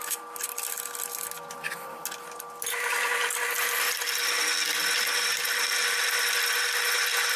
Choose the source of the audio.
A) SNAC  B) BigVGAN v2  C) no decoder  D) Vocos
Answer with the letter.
C